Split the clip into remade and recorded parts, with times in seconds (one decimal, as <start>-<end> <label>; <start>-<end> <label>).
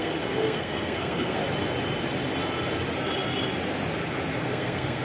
0.0-1.4 remade; 1.4-4.4 recorded; 4.4-5.0 remade